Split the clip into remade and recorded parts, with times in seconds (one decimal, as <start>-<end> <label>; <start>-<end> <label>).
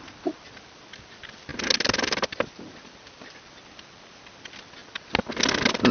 0.0-5.9 recorded